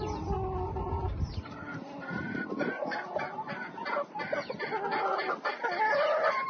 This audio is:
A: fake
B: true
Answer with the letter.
B